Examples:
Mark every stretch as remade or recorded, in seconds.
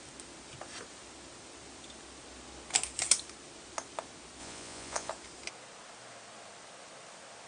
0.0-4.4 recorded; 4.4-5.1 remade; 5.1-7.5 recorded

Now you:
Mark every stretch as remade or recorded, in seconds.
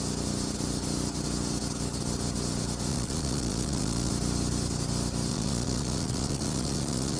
0.0-2.9 recorded; 2.9-4.1 remade; 4.1-5.3 recorded; 5.3-7.2 remade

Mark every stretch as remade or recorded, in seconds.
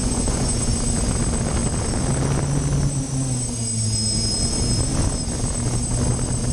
0.0-0.7 remade; 0.7-6.5 recorded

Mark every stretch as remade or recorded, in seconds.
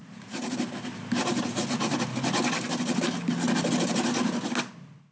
0.0-5.1 recorded